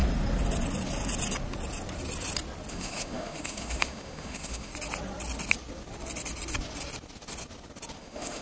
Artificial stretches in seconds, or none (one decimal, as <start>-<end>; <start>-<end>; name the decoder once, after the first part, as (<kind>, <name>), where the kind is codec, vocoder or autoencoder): 2.7-4.7 (autoencoder, DAC-VAE); 8.0-8.4